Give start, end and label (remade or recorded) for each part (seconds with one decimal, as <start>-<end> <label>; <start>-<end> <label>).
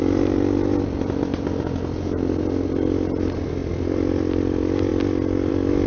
0.0-5.9 recorded